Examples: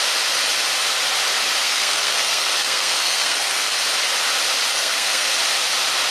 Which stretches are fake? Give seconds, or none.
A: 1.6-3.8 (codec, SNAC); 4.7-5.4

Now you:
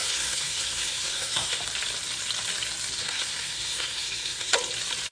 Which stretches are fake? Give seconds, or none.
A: 0.0-1.6 (codec, SNAC); 3.0-4.6

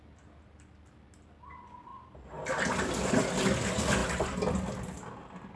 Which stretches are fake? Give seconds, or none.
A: none

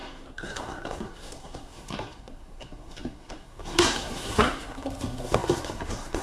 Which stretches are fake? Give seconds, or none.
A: 0.0-6.2 (codec, SNAC)

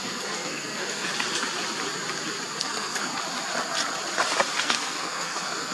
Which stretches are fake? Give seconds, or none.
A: 0.0-1.1 (codec, SNAC); 2.6-3.1; 4.6-5.7

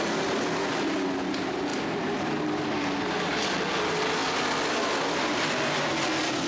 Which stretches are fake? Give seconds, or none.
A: none

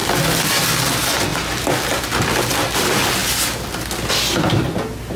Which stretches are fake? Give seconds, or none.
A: none